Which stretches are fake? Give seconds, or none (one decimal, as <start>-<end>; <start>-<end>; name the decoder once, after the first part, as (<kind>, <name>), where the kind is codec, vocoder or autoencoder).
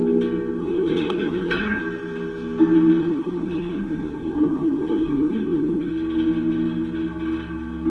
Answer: 0.6-1.8 (codec, SNAC); 3.0-5.9